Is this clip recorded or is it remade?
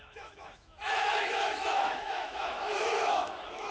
remade